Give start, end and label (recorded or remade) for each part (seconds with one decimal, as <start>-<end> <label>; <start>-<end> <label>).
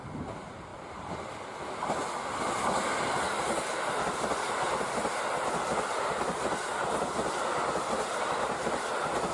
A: 0.0-9.3 recorded